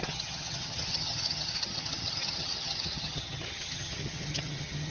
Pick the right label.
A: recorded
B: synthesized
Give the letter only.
B